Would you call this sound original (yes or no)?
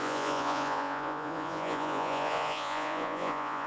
no